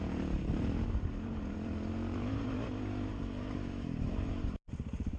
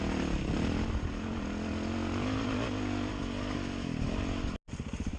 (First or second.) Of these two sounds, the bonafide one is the second